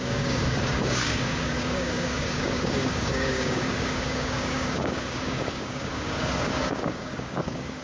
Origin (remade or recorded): remade